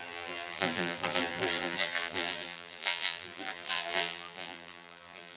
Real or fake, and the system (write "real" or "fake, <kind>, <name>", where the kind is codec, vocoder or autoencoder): fake, vocoder, BigVGAN v2